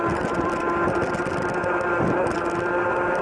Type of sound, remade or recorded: recorded